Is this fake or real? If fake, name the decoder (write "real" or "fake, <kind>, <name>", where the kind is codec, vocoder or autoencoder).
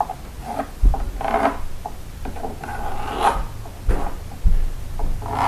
real